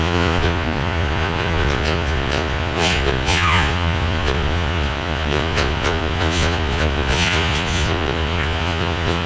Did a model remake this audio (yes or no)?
yes